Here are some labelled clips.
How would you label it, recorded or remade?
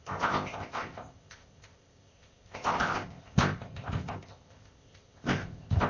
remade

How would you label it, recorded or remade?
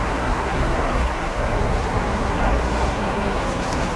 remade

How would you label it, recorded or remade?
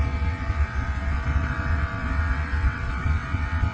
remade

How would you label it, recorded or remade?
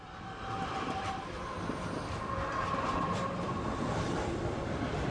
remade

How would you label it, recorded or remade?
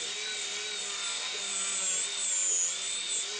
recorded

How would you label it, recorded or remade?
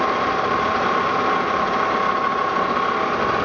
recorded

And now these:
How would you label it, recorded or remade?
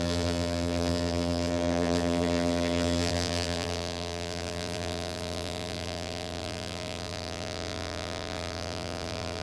remade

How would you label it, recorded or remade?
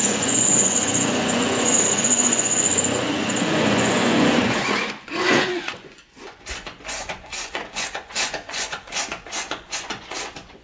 remade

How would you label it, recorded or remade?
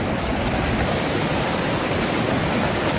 remade